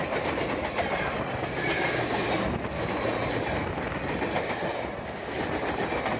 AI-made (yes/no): no